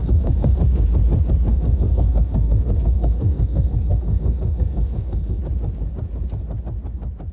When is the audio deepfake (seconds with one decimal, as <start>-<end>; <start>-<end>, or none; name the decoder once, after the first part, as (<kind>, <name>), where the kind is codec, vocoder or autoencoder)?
0.0-0.6 (codec, SNAC); 1.5-5.4